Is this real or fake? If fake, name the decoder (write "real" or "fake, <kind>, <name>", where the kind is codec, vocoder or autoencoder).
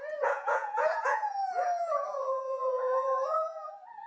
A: fake, vocoder, Vocos